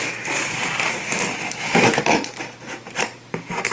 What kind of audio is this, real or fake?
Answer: real